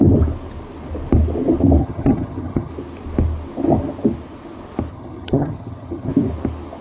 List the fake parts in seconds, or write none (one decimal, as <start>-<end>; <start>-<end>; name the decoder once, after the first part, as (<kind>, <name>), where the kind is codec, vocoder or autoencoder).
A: 1.8-2.7 (vocoder, HiFi-GAN); 4.9-6.1